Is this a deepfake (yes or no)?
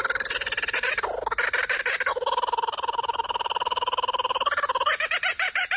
no